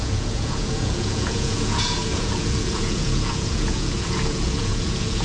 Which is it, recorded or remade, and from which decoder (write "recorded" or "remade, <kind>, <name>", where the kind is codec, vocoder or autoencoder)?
remade, vocoder, Vocos